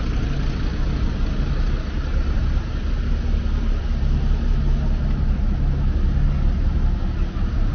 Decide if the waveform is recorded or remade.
recorded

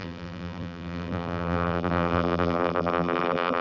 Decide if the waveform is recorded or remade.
remade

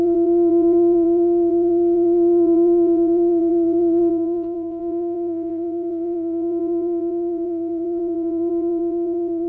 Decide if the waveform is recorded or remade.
remade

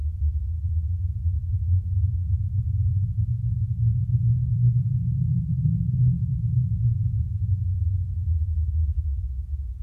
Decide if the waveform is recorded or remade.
recorded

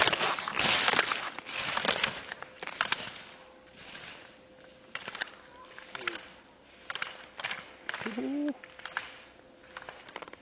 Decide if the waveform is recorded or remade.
recorded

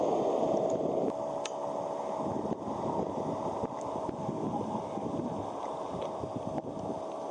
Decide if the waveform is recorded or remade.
recorded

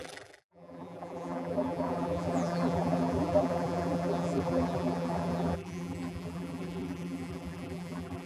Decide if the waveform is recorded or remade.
remade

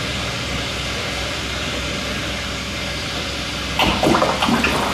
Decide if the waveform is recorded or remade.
recorded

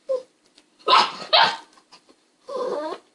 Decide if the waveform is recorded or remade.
remade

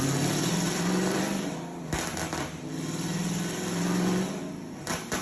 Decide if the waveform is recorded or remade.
remade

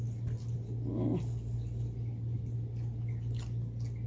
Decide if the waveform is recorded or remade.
recorded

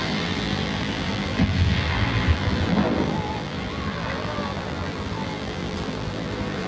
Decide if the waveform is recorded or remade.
remade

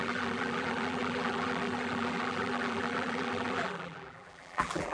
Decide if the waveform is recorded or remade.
remade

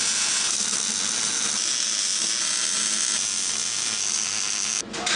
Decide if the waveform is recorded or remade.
recorded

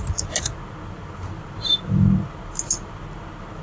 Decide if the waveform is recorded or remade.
recorded